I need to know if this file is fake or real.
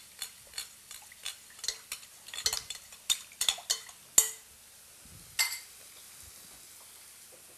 real